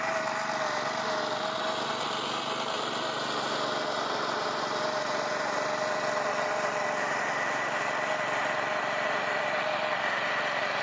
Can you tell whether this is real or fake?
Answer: real